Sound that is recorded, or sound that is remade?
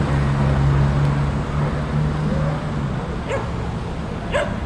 recorded